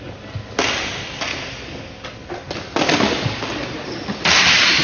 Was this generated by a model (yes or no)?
no